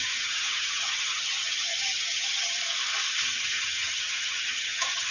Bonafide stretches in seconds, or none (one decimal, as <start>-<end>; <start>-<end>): 2.6-3.4